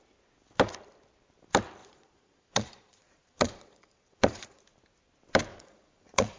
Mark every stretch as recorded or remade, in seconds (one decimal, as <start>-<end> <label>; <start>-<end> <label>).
0.0-1.8 recorded; 1.8-4.6 remade; 4.6-5.5 recorded; 5.5-6.4 remade